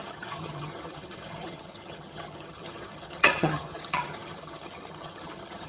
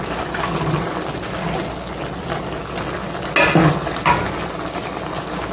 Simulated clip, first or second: first